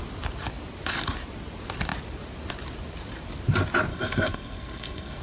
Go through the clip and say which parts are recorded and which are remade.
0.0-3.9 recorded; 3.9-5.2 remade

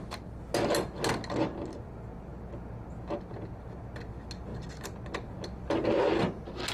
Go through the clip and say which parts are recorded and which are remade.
0.0-6.7 recorded

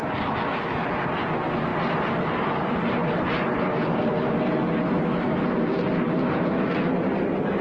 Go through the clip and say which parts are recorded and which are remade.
0.0-1.7 recorded; 1.7-4.4 remade; 4.4-7.6 recorded